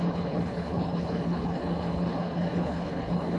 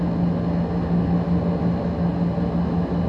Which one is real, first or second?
second